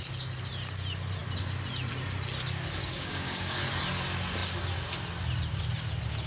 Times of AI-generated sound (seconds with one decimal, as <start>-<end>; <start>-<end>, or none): 2.8-3.8